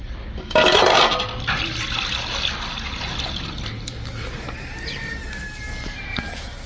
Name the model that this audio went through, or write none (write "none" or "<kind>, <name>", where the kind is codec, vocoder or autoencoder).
none